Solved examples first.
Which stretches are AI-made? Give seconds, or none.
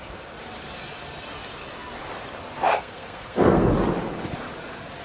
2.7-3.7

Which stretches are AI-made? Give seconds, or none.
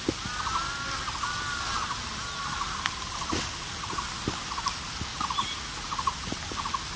5.1-6.1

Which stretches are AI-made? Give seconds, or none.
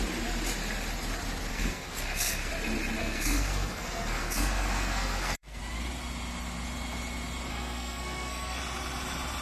1.5-2.5; 3.0-5.6; 7.5-8.6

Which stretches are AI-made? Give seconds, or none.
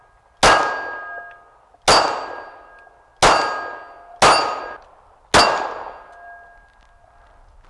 none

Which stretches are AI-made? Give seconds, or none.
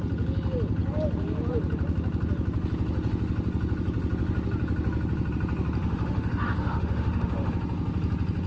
5.8-7.5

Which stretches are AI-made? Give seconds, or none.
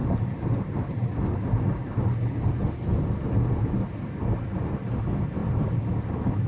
0.0-1.2; 5.4-6.0